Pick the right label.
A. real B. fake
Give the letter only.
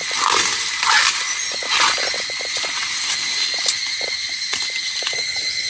A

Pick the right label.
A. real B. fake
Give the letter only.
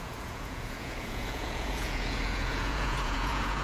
B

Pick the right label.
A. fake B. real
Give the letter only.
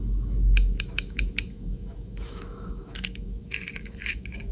A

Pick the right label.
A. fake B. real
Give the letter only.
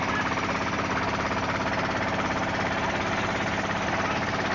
B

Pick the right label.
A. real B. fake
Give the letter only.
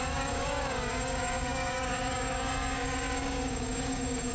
B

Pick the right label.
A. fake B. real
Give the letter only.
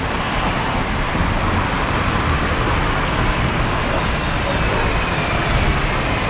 B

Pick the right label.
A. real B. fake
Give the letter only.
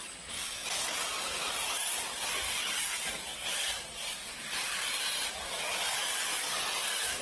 A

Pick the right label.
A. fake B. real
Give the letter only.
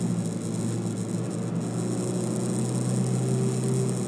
B